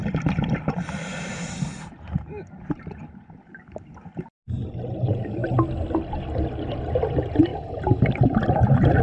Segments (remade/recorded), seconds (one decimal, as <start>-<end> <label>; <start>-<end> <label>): 0.0-9.0 recorded